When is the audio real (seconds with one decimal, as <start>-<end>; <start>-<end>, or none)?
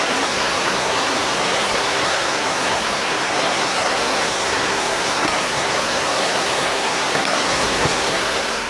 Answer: none